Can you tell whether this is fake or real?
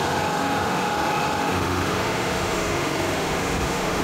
fake